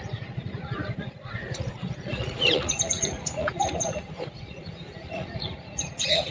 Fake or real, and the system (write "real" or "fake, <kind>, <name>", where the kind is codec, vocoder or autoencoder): fake, vocoder, Vocos